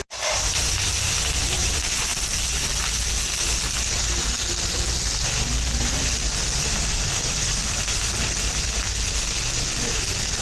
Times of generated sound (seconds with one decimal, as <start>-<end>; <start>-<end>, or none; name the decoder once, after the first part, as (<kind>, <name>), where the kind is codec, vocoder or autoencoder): 0.0-2.1 (vocoder, BigVGAN v2); 6.6-7.6